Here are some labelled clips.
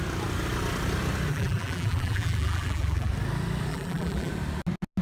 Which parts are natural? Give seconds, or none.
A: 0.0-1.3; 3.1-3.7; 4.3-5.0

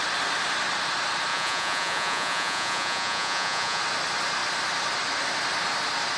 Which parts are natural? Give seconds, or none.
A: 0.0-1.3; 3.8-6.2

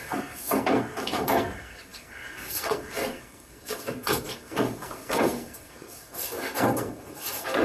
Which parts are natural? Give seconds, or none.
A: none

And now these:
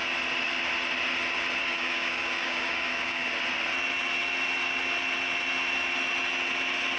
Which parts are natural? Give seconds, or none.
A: 0.0-1.6; 3.3-7.0